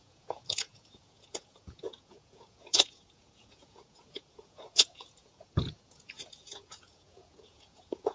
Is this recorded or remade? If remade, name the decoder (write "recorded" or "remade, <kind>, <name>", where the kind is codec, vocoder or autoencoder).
remade, vocoder, Vocos